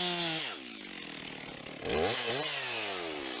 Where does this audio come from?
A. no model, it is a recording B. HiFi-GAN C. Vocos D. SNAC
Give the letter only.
A